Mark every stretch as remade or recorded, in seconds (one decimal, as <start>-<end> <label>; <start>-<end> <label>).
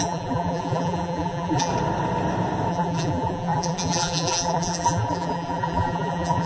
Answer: 0.0-1.7 remade; 1.7-2.7 recorded; 2.7-6.5 remade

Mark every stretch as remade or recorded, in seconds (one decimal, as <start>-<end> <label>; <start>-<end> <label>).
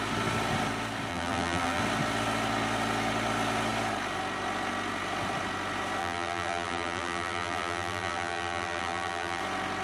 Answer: 0.0-1.1 recorded; 1.1-1.8 remade; 1.8-6.0 recorded; 6.0-9.4 remade; 9.4-9.8 recorded